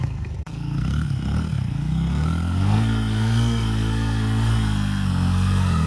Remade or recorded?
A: remade